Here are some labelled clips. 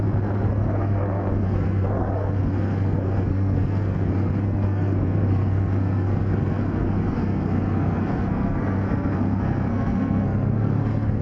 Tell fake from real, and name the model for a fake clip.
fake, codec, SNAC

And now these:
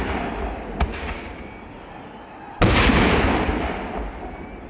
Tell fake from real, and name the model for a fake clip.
real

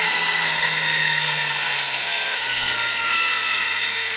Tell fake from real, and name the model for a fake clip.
fake, codec, SNAC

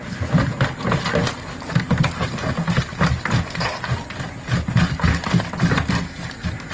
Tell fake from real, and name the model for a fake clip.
real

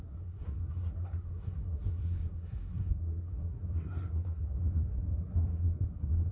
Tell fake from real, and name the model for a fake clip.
fake, codec, SNAC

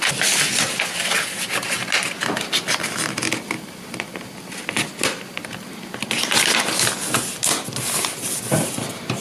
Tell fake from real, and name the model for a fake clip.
real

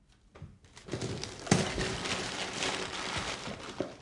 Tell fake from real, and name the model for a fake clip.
real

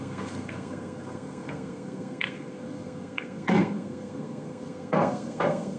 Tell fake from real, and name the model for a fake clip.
fake, codec, SNAC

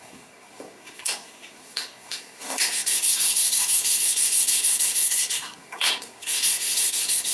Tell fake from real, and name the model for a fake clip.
fake, codec, SNAC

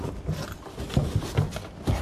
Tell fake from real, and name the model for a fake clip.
real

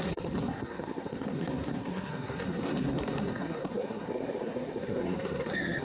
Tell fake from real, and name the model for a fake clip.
fake, codec, SNAC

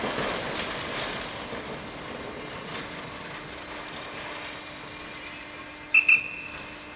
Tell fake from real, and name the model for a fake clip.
real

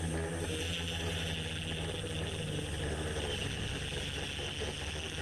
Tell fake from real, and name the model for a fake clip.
real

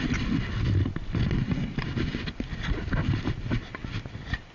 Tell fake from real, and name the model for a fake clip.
real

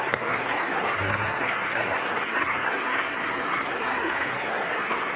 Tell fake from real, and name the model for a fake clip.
fake, codec, SNAC